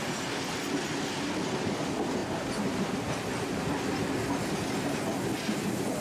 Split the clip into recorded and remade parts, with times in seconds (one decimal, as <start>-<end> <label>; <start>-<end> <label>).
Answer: 0.0-6.0 recorded